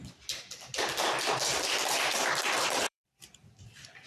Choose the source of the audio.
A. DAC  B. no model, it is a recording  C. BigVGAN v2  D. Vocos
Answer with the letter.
C